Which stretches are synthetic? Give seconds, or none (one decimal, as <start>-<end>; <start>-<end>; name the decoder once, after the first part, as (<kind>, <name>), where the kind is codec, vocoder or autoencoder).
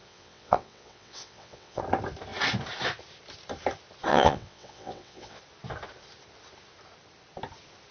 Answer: 0.0-1.8 (vocoder, WaveNeXt); 4.1-5.4